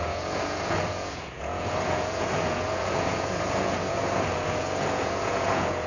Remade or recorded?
remade